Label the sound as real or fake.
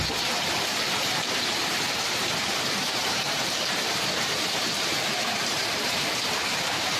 fake